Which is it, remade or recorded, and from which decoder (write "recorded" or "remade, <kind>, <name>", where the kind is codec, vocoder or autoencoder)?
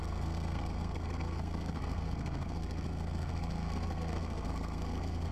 remade, codec, SNAC